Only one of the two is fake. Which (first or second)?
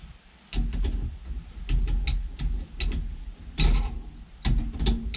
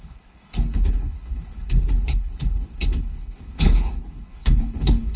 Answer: second